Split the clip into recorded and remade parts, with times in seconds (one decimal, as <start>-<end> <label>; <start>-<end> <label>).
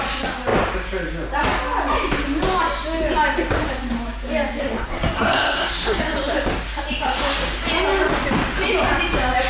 0.0-4.6 recorded; 4.6-6.0 remade; 6.0-9.5 recorded